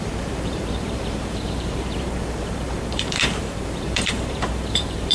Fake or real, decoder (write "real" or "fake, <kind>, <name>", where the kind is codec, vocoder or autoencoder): fake, vocoder, BigVGAN v2